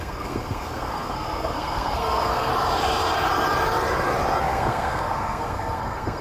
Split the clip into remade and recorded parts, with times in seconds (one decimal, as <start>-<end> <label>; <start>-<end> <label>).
0.0-2.5 remade; 2.5-4.4 recorded; 4.4-6.2 remade